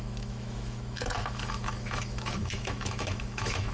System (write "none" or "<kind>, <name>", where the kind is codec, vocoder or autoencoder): autoencoder, DAC-VAE